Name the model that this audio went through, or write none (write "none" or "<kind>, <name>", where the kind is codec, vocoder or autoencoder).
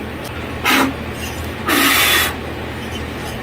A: none